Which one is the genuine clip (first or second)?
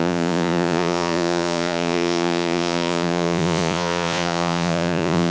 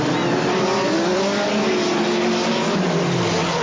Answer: second